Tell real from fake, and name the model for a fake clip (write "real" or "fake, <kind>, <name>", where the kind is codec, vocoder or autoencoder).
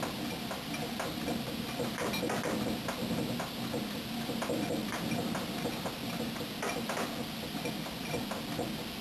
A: real